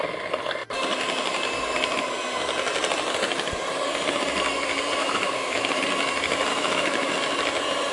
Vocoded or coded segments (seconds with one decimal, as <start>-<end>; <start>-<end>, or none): 5.0-5.8; 6.5-7.1